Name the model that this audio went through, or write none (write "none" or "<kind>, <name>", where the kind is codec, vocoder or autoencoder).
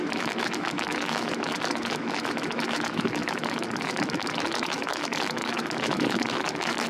autoencoder, DAC-VAE